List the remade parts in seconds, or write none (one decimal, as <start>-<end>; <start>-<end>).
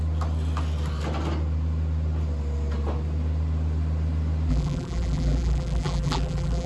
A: 4.5-6.7